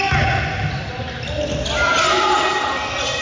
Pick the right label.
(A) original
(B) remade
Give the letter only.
A